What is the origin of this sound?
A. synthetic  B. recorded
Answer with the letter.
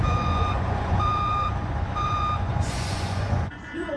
A